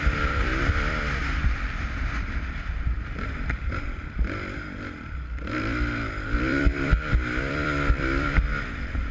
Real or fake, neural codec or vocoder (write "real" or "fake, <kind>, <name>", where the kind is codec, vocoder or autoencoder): fake, vocoder, BigVGAN v2